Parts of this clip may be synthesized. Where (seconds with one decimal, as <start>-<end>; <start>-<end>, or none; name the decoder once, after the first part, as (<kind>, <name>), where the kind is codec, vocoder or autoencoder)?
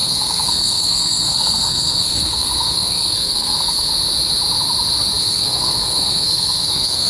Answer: 0.0-3.9 (codec, SNAC); 5.2-7.1